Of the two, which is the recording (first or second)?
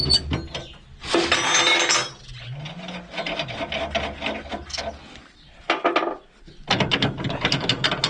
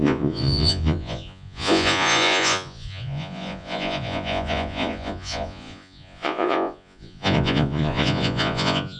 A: first